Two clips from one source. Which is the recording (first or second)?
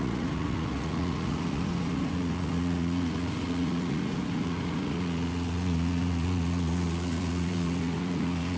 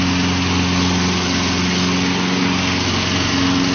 second